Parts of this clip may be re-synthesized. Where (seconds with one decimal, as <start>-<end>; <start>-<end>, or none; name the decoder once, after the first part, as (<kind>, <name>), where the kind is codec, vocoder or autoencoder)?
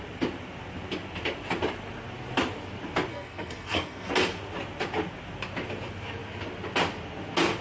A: 3.1-4.1 (codec, SNAC)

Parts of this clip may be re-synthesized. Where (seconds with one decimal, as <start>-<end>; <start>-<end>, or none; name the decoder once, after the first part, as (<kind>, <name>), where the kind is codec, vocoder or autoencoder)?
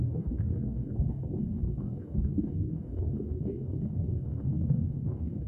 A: 0.0-5.5 (codec, DAC)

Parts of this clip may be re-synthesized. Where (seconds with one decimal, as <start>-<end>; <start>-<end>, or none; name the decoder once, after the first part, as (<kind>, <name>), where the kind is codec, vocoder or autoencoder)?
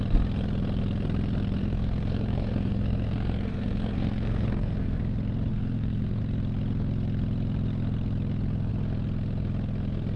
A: 1.6-5.0 (codec, SNAC); 5.5-6.2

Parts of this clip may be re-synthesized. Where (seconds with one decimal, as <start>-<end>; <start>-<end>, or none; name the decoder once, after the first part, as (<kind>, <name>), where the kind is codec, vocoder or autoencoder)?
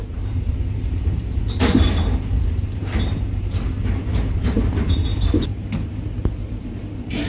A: 0.0-5.1 (vocoder, BigVGAN v2); 6.6-7.3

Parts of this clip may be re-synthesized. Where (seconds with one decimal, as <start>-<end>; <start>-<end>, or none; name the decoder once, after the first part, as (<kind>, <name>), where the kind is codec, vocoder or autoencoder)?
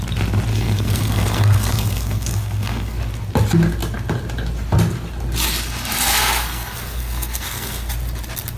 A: 0.5-3.0 (codec, SNAC); 6.1-7.9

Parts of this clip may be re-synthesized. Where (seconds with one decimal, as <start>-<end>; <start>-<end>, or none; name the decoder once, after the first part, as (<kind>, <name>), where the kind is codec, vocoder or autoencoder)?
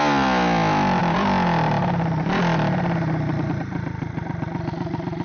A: none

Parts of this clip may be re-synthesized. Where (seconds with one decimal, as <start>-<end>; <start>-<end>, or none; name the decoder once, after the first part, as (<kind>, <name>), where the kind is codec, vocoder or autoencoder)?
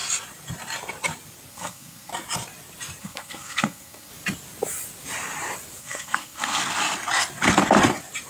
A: 1.5-2.1 (codec, SNAC); 3.0-4.1; 5.8-6.6